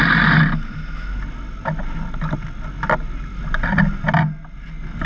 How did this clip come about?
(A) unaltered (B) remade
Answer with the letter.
A